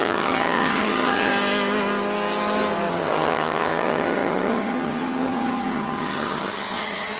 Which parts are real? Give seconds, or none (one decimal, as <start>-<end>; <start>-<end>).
1.3-2.9